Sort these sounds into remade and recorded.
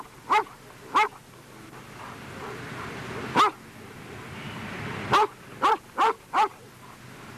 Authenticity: recorded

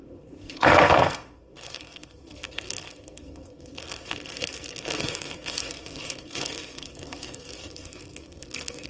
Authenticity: remade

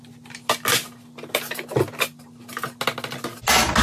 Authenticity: recorded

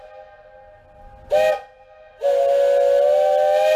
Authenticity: recorded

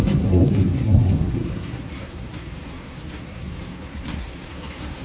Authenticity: remade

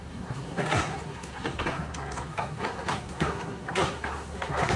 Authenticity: remade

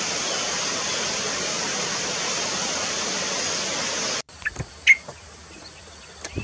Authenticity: recorded